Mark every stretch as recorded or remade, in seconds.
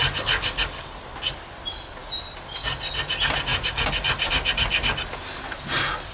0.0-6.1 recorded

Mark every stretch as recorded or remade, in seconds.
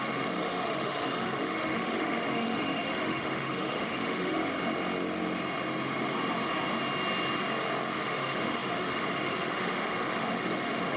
0.0-4.4 remade; 4.4-8.0 recorded; 8.0-11.0 remade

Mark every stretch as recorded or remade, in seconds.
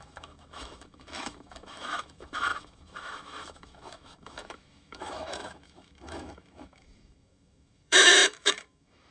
0.0-9.1 remade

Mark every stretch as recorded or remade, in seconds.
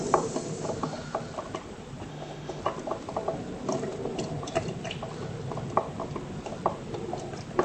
0.0-2.1 recorded; 2.1-2.6 remade; 2.6-7.6 recorded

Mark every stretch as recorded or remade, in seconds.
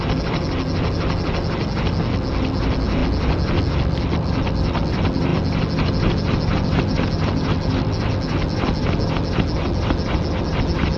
0.0-11.0 recorded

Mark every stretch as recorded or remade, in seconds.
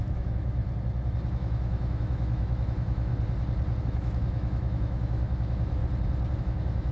0.0-0.6 remade; 0.6-1.3 recorded; 1.3-3.1 remade; 3.1-3.8 recorded; 3.8-5.8 remade; 5.8-6.4 recorded; 6.4-6.9 remade